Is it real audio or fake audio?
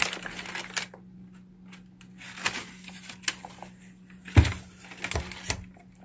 real